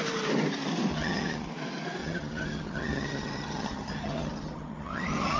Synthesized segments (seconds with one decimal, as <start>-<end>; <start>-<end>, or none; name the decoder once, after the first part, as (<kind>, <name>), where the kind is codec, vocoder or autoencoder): 0.9-1.5 (vocoder, HiFi-GAN); 2.0-5.4